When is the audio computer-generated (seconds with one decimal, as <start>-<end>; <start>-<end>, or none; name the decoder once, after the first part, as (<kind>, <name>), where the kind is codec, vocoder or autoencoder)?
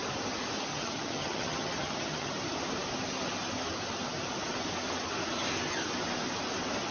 0.7-2.3 (vocoder, HiFi-GAN)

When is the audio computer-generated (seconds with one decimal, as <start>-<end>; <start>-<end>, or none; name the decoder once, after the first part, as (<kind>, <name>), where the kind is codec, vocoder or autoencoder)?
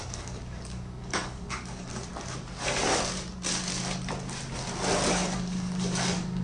0.0-1.9 (codec, DAC); 5.1-6.4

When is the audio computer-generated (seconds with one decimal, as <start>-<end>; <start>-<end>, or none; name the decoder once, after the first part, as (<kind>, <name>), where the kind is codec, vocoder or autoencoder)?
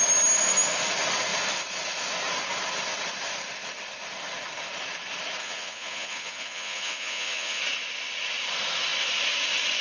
5.4-7.6 (vocoder, Vocos)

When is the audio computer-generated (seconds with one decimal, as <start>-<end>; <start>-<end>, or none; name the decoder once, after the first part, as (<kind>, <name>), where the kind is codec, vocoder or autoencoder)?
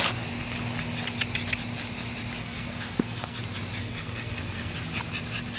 2.4-3.4 (codec, SNAC); 3.8-4.7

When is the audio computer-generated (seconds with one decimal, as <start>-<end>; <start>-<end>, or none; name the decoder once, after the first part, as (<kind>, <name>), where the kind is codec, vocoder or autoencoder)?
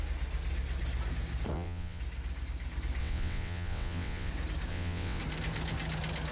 1.5-2.0 (vocoder, WaveNeXt); 3.0-4.3; 4.7-5.2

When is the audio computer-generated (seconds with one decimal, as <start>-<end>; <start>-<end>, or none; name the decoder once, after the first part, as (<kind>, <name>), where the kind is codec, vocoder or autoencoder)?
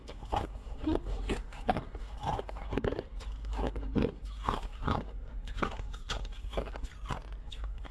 0.0-6.9 (codec, SNAC); 7.4-7.9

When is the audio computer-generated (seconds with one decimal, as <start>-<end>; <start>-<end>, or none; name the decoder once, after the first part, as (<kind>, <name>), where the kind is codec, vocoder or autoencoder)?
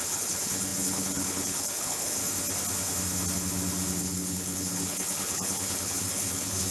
0.0-2.2 (codec, HILCodec); 4.0-6.7